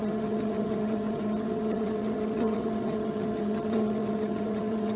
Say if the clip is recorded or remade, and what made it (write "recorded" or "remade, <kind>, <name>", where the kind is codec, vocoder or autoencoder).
remade, vocoder, HiFi-GAN